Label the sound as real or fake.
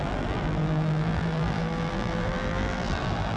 fake